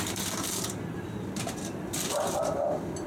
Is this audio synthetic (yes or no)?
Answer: yes